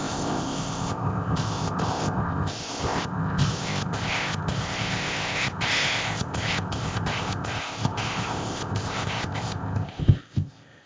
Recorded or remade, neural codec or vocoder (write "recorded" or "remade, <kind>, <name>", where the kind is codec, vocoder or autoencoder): remade, codec, ZipCodec